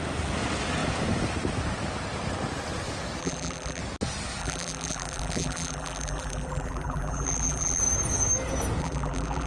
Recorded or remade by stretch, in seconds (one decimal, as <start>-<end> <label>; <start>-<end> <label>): 0.0-3.2 recorded; 3.2-3.8 remade; 3.8-4.4 recorded; 4.4-7.8 remade; 7.8-8.8 recorded; 8.8-9.5 remade